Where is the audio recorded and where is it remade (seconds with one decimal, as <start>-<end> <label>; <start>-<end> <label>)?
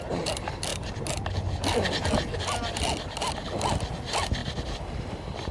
0.0-4.4 recorded; 4.4-5.5 remade